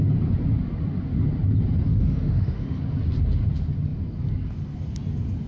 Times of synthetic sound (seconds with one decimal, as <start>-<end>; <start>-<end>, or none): 1.9-2.8

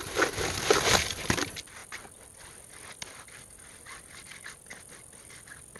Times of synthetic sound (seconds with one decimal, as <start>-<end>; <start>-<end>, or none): none

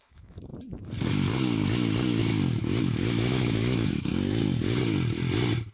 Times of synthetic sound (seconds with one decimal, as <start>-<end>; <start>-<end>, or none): 0.0-0.5; 2.8-4.1